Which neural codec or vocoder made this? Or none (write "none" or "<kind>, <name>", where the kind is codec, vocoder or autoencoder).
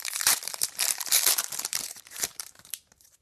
vocoder, BigVGAN v2